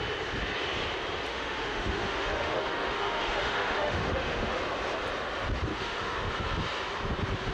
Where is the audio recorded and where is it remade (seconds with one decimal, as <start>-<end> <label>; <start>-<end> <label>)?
0.0-1.3 recorded; 1.3-4.6 remade; 4.6-5.7 recorded; 5.7-6.3 remade; 6.3-7.5 recorded